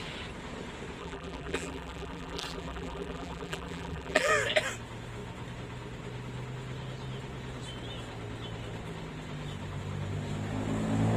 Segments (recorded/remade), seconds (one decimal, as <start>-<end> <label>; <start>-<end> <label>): 0.0-1.0 recorded; 1.0-4.3 remade; 4.3-11.2 recorded

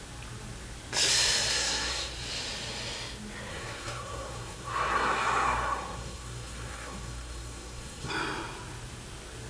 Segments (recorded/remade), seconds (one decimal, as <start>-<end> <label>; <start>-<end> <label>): 0.0-1.5 recorded; 1.5-2.1 remade; 2.1-3.5 recorded; 3.5-8.1 remade; 8.1-9.5 recorded

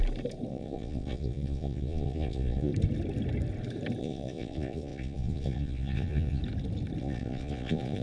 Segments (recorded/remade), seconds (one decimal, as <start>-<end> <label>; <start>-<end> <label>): 0.0-0.5 recorded; 0.5-2.7 remade; 2.7-4.0 recorded; 4.0-6.4 remade; 6.4-7.0 recorded; 7.0-8.0 remade

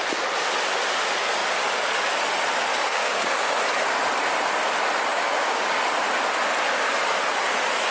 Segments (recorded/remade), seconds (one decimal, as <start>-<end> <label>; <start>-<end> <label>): 0.0-2.7 recorded; 2.7-3.5 remade; 3.5-5.1 recorded; 5.1-5.8 remade; 5.8-7.9 recorded

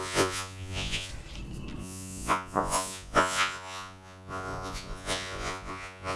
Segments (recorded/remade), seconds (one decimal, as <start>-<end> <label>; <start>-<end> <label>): 0.0-1.1 remade; 1.1-1.8 recorded; 1.8-6.2 remade